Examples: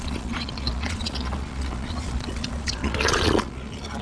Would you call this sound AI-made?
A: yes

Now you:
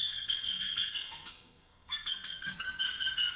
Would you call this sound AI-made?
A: yes